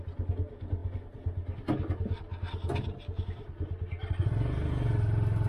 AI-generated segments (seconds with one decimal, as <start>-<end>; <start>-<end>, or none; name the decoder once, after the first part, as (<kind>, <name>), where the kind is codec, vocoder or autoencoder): none